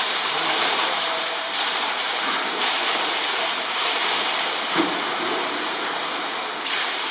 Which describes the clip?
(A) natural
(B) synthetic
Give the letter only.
B